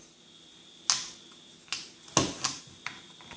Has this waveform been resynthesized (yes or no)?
no